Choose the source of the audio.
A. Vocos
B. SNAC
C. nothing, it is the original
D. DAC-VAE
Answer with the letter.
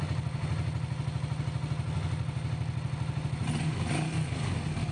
C